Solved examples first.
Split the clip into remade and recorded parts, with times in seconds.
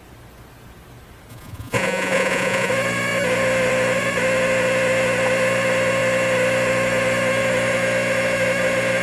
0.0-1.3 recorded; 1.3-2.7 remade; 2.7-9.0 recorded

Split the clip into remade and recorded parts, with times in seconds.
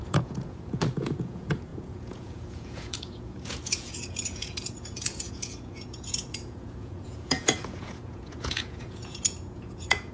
0.0-10.1 remade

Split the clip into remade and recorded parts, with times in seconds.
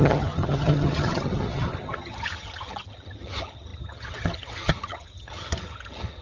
0.0-6.2 remade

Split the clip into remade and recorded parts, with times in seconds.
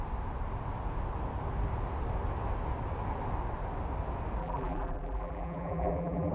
0.0-4.4 recorded; 4.4-6.3 remade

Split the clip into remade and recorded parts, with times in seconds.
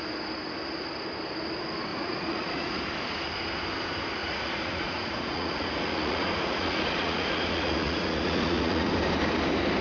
0.0-1.9 recorded; 1.9-2.8 remade; 2.8-4.2 recorded; 4.2-8.9 remade; 8.9-9.8 recorded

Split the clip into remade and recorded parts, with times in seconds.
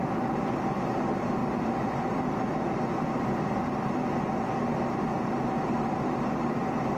0.0-7.0 recorded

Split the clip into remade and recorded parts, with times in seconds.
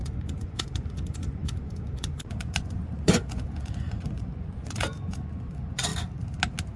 0.0-5.9 remade; 5.9-6.8 recorded